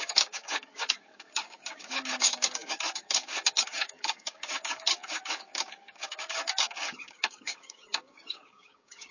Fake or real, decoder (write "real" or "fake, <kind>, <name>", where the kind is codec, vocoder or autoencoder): fake, codec, DAC